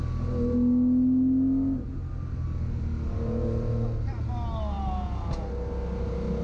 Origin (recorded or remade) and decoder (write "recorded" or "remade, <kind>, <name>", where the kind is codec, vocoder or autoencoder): recorded